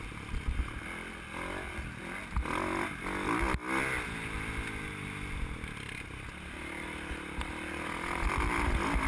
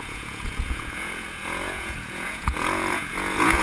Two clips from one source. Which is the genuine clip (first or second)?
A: first